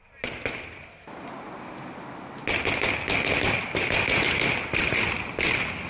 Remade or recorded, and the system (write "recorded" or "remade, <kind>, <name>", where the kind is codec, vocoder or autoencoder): recorded